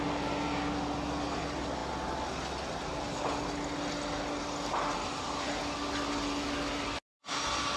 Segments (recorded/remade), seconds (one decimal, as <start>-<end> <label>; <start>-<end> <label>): 0.0-7.8 recorded